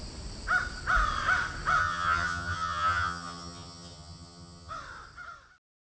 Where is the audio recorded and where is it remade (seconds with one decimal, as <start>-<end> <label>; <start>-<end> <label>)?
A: 0.0-1.8 recorded; 1.8-4.7 remade; 4.7-6.0 recorded